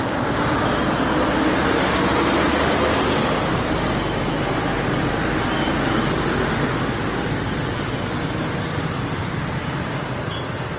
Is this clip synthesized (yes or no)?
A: no